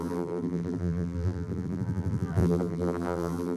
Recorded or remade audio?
remade